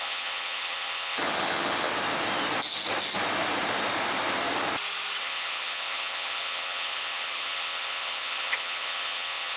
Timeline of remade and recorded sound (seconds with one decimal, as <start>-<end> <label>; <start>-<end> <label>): 0.0-1.9 remade; 1.9-5.2 recorded; 5.2-9.6 remade